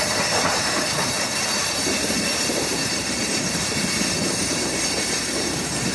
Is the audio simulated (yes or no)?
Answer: yes